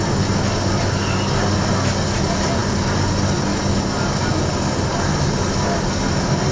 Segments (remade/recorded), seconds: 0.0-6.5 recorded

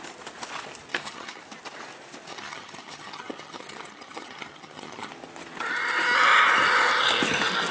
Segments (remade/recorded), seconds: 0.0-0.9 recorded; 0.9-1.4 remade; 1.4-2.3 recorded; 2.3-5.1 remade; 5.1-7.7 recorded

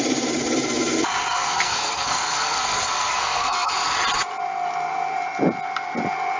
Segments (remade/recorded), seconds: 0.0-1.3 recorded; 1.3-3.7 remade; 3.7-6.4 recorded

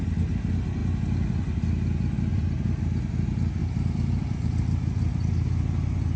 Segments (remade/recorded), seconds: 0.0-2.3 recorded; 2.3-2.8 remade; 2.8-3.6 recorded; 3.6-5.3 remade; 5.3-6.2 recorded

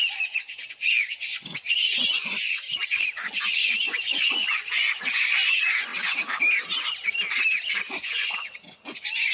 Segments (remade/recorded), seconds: 0.0-5.9 remade; 5.9-7.8 recorded; 7.8-9.3 remade

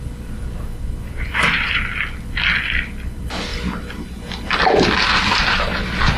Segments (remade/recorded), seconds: 0.0-6.2 recorded

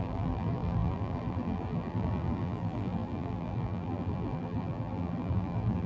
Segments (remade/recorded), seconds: 0.0-5.9 remade

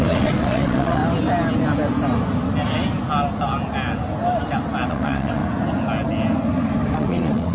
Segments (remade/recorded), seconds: 0.0-1.0 remade; 1.0-4.9 recorded; 4.9-5.4 remade; 5.4-6.9 recorded; 6.9-7.5 remade